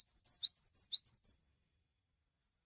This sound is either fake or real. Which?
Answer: real